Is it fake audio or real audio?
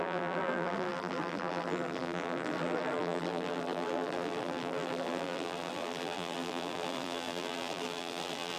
fake